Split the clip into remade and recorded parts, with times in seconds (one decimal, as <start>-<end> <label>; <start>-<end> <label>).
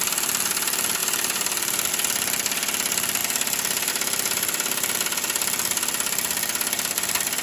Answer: 0.0-1.0 recorded; 1.0-1.9 remade; 1.9-3.2 recorded; 3.2-3.9 remade; 3.9-7.4 recorded